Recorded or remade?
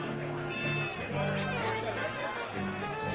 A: recorded